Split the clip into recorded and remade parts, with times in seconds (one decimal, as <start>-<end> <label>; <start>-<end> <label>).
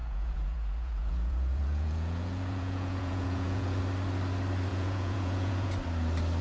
0.0-3.8 remade; 3.8-4.7 recorded; 4.7-5.7 remade; 5.7-6.4 recorded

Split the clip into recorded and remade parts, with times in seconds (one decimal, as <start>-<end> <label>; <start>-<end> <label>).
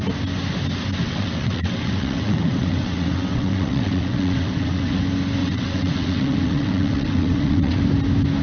0.0-1.0 recorded; 1.0-5.0 remade; 5.0-5.4 recorded; 5.4-7.8 remade; 7.8-8.4 recorded